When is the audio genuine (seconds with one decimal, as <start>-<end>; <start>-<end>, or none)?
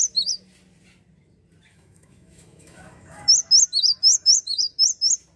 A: 0.0-1.7; 3.3-4.1; 4.7-5.4